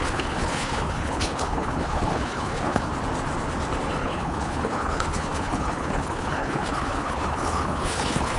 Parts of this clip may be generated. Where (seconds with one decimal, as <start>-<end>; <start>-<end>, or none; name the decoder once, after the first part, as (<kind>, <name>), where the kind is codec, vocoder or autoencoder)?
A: 0.0-2.9 (codec, HILCodec); 4.0-8.4